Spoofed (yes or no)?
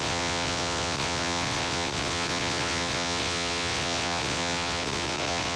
yes